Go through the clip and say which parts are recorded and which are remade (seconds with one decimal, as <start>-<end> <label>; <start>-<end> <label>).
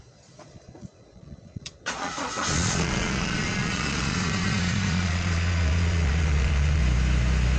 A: 0.0-6.8 remade; 6.8-7.6 recorded